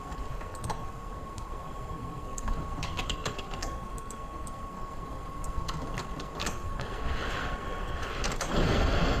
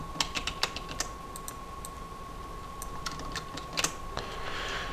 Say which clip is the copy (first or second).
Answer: first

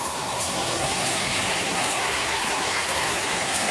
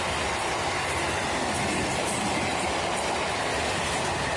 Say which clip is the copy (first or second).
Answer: first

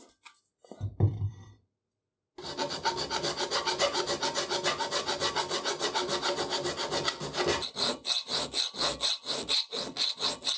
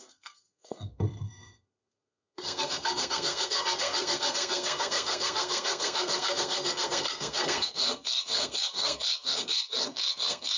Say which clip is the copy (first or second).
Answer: second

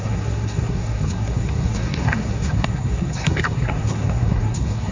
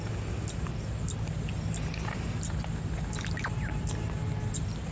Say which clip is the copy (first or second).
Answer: first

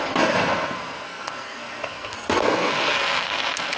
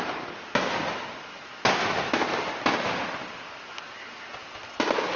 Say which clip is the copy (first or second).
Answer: first